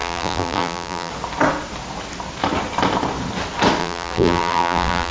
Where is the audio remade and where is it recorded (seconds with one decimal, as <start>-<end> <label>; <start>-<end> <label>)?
0.0-1.1 remade; 1.1-3.8 recorded; 3.8-5.1 remade